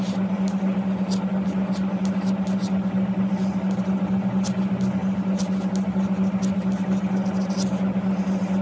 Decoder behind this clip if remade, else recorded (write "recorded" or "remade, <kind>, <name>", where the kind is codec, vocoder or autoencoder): recorded